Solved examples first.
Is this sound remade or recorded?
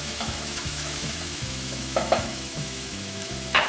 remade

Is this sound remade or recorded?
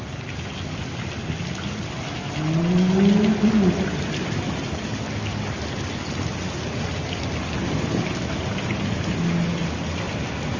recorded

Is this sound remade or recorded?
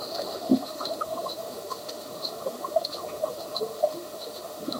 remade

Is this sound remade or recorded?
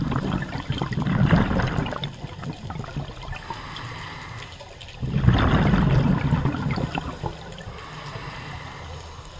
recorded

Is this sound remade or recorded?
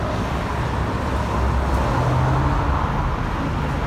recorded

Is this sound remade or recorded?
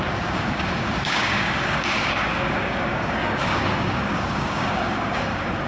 remade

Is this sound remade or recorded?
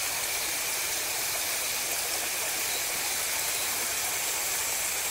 recorded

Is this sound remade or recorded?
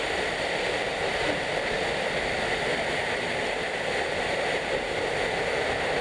recorded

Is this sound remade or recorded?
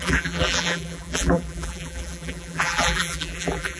remade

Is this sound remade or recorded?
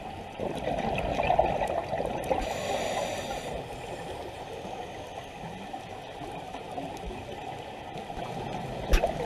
recorded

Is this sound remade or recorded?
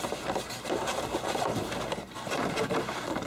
remade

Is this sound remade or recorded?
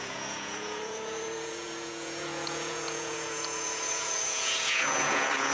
remade